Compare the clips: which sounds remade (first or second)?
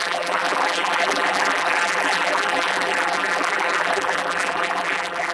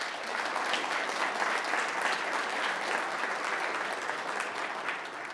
first